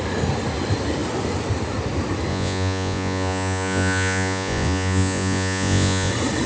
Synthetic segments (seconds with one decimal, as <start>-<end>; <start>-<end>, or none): 2.3-6.1